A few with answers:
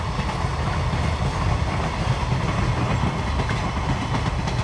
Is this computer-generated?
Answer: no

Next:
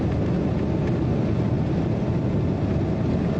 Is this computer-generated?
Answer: no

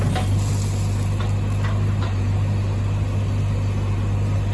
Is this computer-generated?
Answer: no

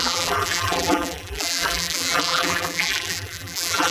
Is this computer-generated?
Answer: yes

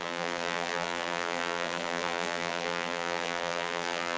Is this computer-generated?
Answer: yes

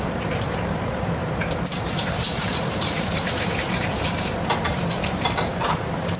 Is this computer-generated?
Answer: yes